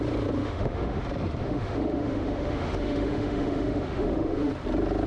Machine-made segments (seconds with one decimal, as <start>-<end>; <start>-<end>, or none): 0.4-1.0; 1.4-4.5